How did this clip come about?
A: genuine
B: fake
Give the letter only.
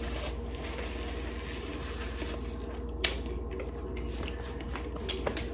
A